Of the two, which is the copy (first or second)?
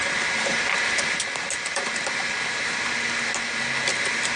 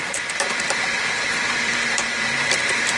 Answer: second